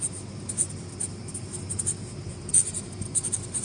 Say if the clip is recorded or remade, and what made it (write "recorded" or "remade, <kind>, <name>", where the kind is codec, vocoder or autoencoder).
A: recorded